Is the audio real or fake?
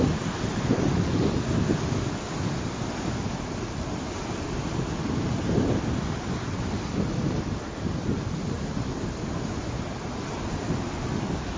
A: real